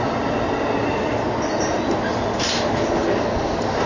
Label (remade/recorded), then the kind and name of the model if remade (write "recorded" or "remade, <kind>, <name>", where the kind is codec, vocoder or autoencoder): recorded